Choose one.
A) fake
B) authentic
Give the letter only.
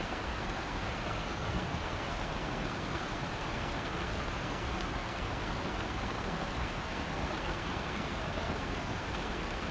A